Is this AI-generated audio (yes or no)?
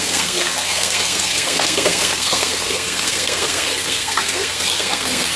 yes